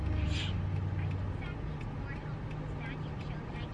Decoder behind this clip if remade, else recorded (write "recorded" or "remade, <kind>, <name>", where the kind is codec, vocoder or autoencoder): recorded